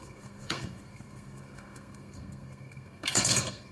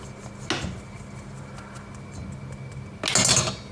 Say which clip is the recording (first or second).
second